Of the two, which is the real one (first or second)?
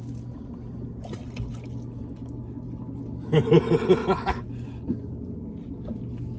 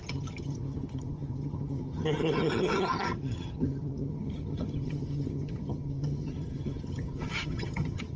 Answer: first